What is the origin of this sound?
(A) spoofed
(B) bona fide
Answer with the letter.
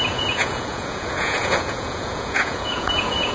A